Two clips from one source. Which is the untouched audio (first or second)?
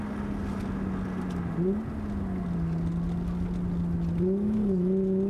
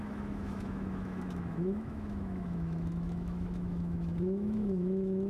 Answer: first